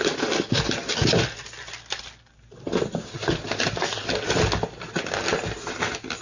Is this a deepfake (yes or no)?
no